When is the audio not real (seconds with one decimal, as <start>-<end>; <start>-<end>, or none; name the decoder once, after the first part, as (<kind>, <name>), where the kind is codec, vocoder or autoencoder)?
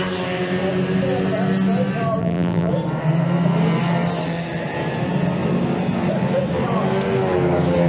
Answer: 2.2-2.7 (vocoder, BigVGAN v2)